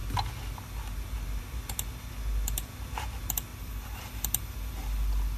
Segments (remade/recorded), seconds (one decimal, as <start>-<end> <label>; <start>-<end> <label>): 0.0-3.5 recorded; 3.5-4.0 remade; 4.0-5.4 recorded

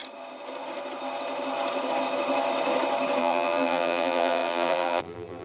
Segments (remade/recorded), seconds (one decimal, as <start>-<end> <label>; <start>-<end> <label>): 0.0-3.2 recorded; 3.2-5.4 remade

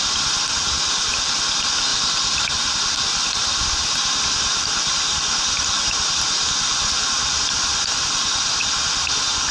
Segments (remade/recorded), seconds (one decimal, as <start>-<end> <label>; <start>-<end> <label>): 0.0-1.9 recorded; 1.9-3.7 remade; 3.7-9.5 recorded

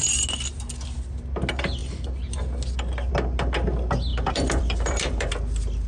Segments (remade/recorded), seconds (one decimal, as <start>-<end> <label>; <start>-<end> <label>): 0.0-4.1 recorded; 4.1-5.3 remade; 5.3-5.9 recorded

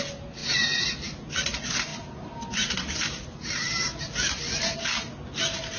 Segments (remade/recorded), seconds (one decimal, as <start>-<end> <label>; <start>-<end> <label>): 0.0-0.4 remade; 0.4-1.4 recorded; 1.4-1.9 remade; 1.9-5.8 recorded

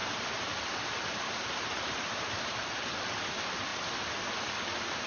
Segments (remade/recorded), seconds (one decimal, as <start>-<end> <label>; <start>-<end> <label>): 0.0-3.1 remade; 3.1-5.1 recorded

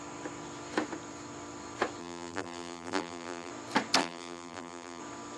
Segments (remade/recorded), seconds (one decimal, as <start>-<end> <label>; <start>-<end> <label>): 0.0-2.0 recorded; 2.0-3.5 remade; 3.5-4.0 recorded; 4.0-5.0 remade; 5.0-5.4 recorded

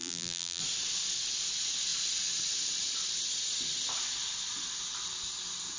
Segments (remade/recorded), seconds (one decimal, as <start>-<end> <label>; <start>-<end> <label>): 0.0-0.6 remade; 0.6-5.8 recorded